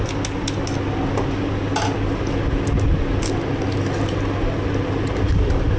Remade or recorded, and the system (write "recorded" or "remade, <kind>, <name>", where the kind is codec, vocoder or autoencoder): recorded